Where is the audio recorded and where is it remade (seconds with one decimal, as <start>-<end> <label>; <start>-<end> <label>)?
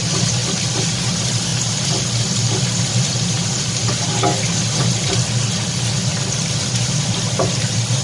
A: 0.0-8.0 recorded